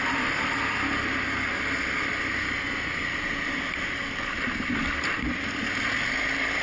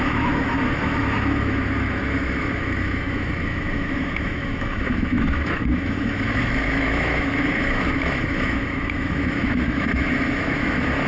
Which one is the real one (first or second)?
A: first